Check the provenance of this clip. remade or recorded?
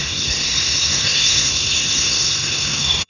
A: remade